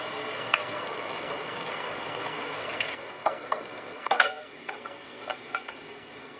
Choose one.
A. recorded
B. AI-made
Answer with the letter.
B